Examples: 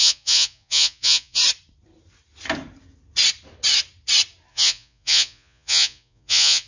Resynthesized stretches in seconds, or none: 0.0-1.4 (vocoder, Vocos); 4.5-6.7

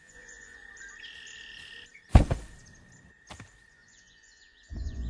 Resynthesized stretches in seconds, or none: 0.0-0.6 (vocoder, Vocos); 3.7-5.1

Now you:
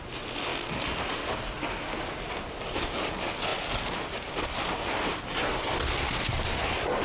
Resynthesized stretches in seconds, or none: none

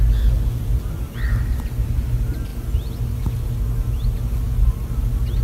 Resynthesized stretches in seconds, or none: none